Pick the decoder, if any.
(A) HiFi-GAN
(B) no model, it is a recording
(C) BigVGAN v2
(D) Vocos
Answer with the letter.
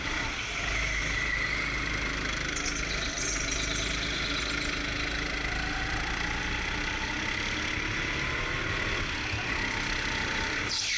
B